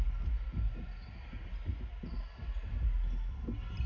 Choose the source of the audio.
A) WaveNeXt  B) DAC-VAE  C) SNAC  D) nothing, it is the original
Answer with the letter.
D